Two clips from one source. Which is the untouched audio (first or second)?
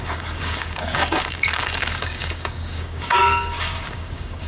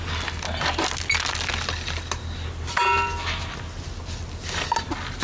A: second